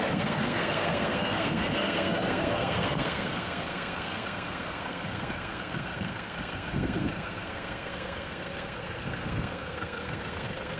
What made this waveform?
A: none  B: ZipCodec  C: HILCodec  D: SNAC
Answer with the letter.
D